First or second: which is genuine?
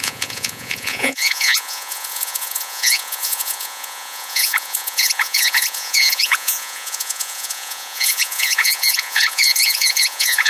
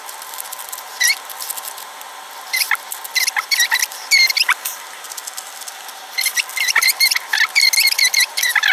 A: second